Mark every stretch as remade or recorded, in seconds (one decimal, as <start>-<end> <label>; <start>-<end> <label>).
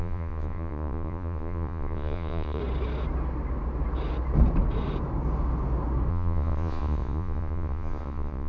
0.0-2.6 remade; 2.6-6.1 recorded; 6.1-8.5 remade